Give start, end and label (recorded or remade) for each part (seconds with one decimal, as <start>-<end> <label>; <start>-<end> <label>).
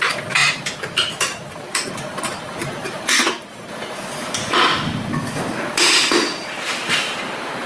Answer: 0.0-0.4 recorded; 0.4-1.9 remade; 1.9-2.6 recorded; 2.6-7.2 remade; 7.2-7.7 recorded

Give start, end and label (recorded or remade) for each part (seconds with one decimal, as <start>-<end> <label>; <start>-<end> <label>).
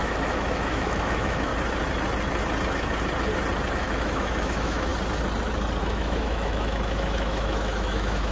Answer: 0.0-1.5 remade; 1.5-3.7 recorded; 3.7-4.9 remade; 4.9-5.8 recorded; 5.8-8.3 remade